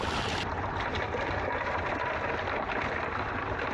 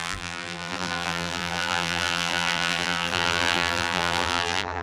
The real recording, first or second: first